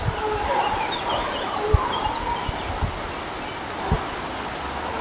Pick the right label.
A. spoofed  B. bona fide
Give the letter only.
B